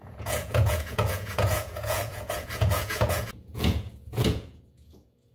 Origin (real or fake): fake